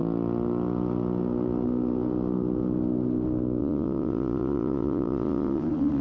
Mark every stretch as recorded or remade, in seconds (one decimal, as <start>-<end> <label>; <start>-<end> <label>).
0.0-3.6 recorded; 3.6-6.0 remade